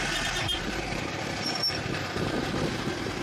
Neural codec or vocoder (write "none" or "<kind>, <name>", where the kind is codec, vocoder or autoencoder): vocoder, BigVGAN v2